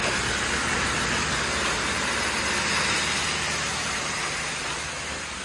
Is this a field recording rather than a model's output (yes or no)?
yes